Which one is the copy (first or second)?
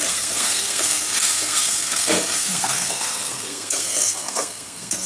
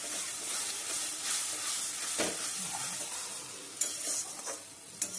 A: first